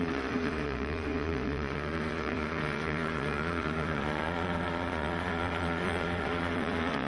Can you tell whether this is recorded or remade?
remade